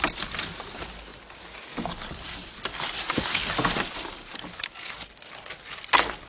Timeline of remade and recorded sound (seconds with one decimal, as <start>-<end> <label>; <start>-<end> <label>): 0.0-6.3 recorded